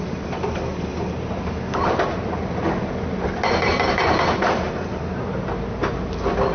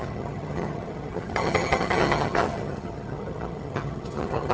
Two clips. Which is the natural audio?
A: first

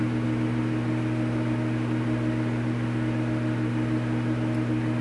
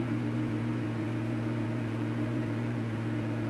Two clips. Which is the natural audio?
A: first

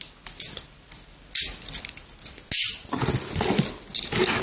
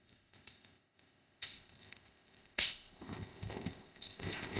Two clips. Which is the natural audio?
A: first